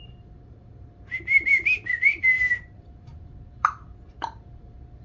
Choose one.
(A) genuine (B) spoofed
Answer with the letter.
B